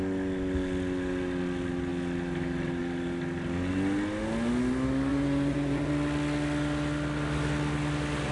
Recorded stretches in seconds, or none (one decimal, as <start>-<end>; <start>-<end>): 0.0-5.1; 5.9-8.3